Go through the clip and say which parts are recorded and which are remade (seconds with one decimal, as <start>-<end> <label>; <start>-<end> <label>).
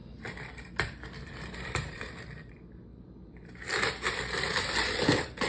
0.0-2.5 remade; 2.5-2.9 recorded; 2.9-4.2 remade; 4.2-5.5 recorded